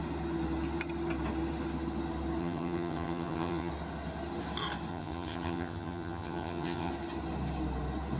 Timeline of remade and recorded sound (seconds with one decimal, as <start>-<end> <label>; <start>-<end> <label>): 0.0-2.4 recorded; 2.4-3.7 remade; 3.7-4.9 recorded; 4.9-6.9 remade; 6.9-8.2 recorded